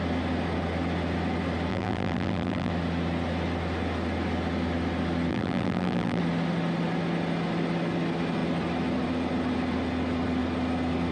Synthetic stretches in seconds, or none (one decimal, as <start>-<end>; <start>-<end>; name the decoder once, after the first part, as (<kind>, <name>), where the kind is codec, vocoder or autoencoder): 1.7-2.7 (vocoder, BigVGAN v2); 5.3-6.2